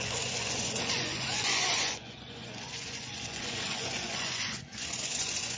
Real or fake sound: fake